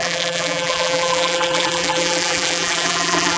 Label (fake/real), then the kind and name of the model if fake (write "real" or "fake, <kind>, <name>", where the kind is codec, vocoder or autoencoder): fake, vocoder, BigVGAN v2